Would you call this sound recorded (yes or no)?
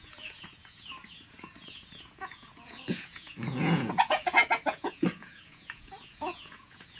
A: no